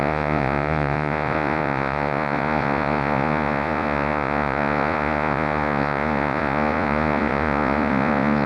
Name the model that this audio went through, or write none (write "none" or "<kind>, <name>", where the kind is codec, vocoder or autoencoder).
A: vocoder, Vocos